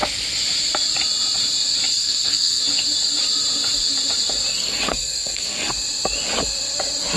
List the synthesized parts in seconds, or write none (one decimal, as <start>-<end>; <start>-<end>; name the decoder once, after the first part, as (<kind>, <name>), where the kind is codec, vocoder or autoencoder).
1.9-2.6 (codec, SNAC); 4.5-5.7